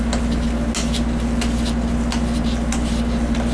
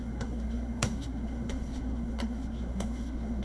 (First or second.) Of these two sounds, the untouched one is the first